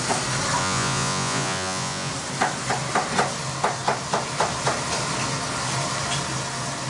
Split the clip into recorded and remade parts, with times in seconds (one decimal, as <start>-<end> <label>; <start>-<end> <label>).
0.0-0.6 recorded; 0.6-2.1 remade; 2.1-6.9 recorded